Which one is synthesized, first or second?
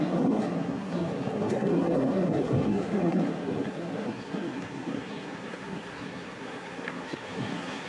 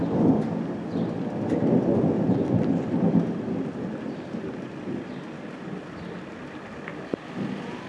first